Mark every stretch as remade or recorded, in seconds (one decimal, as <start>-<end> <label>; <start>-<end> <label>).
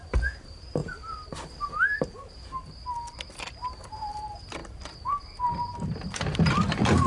0.0-0.8 remade; 0.8-3.8 recorded; 3.8-4.6 remade; 4.6-5.4 recorded; 5.4-7.1 remade